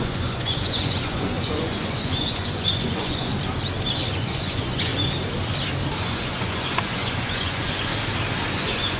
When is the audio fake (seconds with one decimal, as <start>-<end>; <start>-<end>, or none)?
0.0-3.3; 4.1-4.9; 6.0-7.9; 8.5-9.0